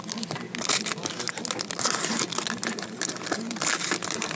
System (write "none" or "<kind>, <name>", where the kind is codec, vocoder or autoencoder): none